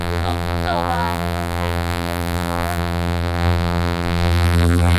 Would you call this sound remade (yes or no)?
yes